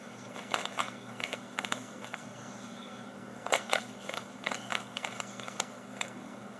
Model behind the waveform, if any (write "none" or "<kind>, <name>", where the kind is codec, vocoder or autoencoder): codec, SNAC